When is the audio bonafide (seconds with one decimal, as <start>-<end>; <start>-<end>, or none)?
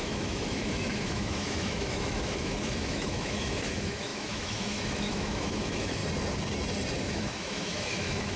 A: 6.0-7.1